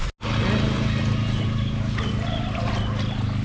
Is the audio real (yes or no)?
yes